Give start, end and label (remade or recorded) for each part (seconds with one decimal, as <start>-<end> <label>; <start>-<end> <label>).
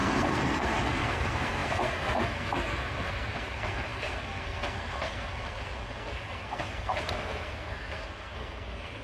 0.0-9.0 remade